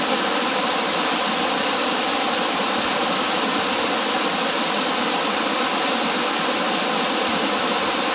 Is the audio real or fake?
real